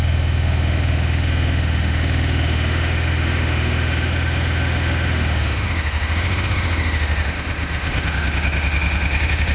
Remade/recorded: remade